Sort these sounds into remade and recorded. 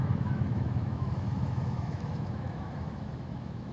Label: remade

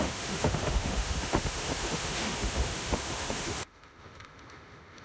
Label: remade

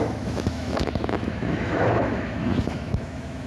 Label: remade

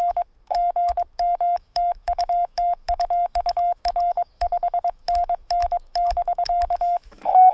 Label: remade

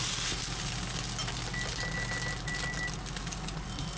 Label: recorded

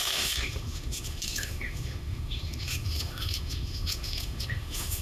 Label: remade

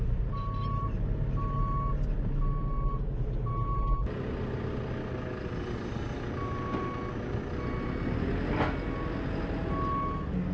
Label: recorded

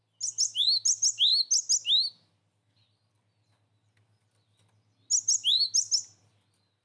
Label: recorded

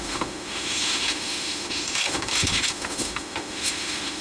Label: remade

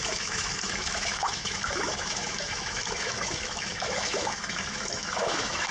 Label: remade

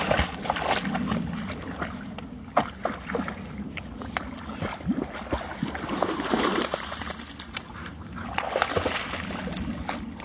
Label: recorded